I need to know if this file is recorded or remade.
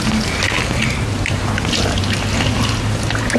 recorded